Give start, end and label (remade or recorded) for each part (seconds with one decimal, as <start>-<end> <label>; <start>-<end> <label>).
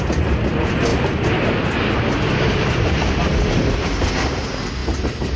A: 0.0-0.9 recorded; 0.9-4.1 remade; 4.1-5.4 recorded